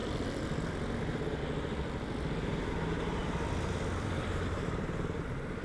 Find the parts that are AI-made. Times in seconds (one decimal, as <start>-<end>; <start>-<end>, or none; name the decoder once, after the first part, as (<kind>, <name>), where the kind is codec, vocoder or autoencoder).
0.0-1.4 (vocoder, BigVGAN v2); 3.2-5.6

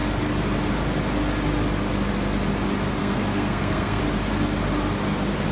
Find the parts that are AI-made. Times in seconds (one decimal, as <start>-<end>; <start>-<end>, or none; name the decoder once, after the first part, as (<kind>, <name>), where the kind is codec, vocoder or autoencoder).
3.0-4.0 (codec, SNAC)

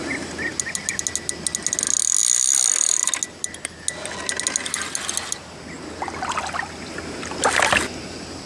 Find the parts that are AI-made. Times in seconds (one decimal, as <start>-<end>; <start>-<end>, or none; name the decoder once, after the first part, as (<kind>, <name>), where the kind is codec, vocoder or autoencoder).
none